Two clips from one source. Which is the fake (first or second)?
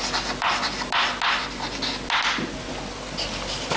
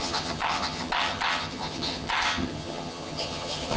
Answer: second